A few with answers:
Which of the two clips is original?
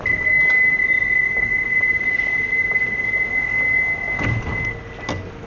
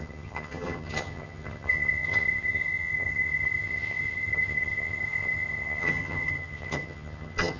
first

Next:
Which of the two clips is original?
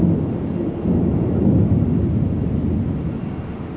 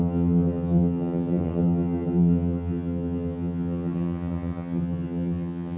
first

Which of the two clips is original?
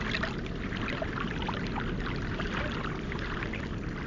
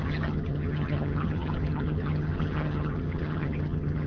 first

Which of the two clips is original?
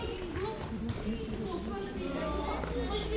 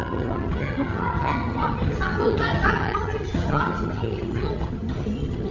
first